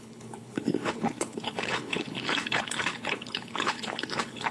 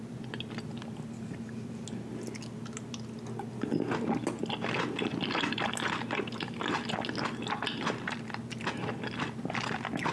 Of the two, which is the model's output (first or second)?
first